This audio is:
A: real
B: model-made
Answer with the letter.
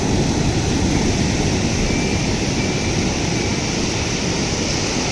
A